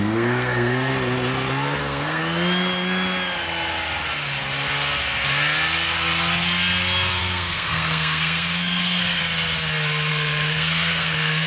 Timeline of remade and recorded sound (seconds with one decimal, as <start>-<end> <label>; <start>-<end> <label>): 0.0-0.9 remade; 0.9-1.8 recorded; 1.8-2.2 remade; 2.2-7.2 recorded; 7.2-9.2 remade; 9.2-10.1 recorded; 10.1-11.5 remade